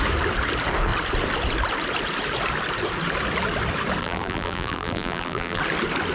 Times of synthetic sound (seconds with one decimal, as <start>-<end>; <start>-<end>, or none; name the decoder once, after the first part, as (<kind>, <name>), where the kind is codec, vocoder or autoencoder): 4.0-5.6 (vocoder, BigVGAN v2)